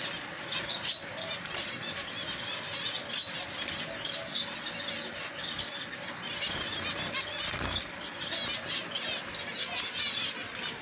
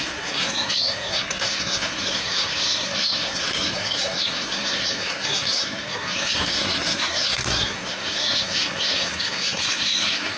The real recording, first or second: first